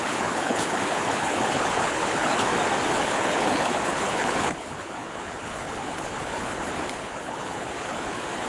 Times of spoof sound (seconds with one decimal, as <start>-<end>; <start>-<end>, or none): 0.0-2.5; 3.0-8.5